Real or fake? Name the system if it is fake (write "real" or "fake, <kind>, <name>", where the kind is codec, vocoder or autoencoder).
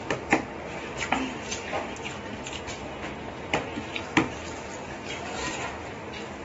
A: real